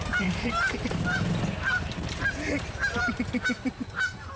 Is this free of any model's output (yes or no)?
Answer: no